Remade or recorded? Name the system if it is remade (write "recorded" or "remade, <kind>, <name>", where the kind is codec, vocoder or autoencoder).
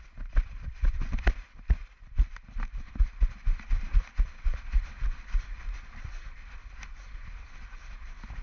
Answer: remade, vocoder, BigVGAN v2